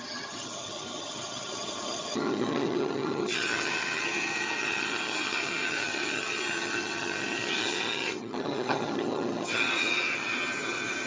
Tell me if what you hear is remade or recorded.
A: remade